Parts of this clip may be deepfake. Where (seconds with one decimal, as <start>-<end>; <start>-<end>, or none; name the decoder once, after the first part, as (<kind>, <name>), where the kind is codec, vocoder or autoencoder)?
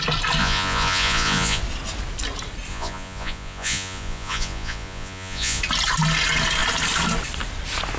0.4-1.6 (vocoder, Vocos); 2.7-5.6